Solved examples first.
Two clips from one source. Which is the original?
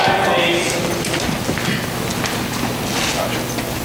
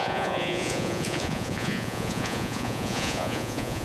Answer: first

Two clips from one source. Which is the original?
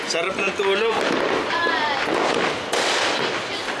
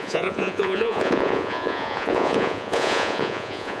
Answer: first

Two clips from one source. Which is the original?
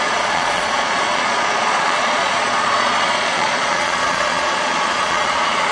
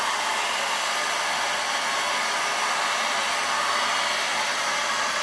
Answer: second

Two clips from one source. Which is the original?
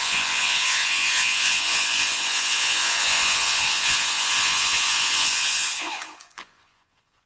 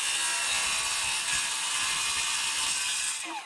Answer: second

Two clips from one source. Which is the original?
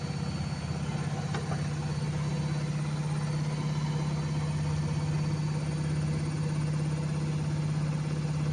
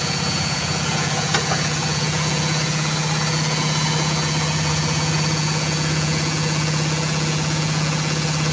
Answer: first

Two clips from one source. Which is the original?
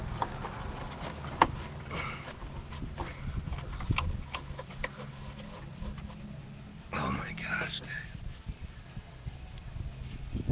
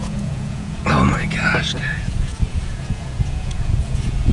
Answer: first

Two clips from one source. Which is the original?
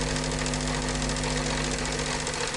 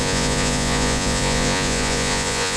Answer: first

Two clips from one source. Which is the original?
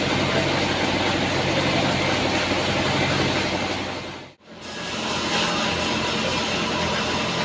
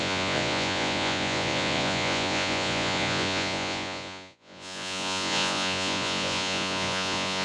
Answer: first